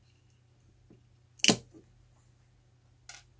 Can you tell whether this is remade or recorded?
recorded